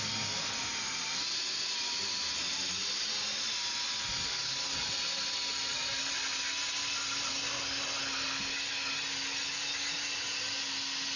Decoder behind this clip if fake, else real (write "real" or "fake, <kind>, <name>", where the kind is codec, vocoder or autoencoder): real